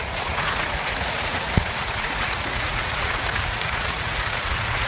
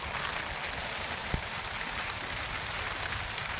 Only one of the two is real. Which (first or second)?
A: second